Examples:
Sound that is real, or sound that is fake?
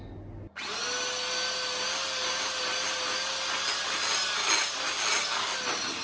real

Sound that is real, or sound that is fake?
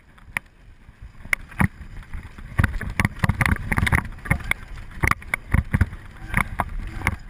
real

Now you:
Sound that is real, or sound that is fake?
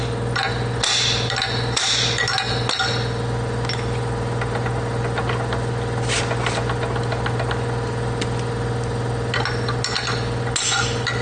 real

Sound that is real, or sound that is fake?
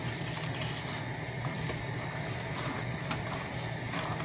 fake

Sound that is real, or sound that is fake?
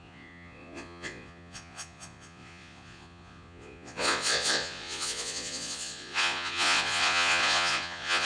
fake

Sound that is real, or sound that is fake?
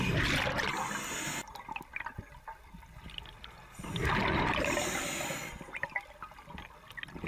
real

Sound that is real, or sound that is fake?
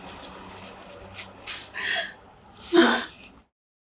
real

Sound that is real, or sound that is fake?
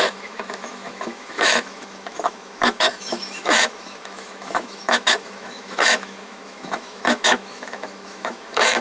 fake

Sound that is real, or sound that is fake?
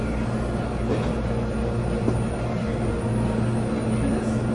real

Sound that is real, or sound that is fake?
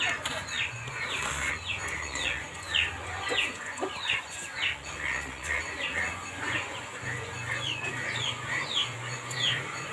fake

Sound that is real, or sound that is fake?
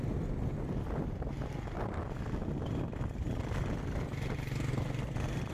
real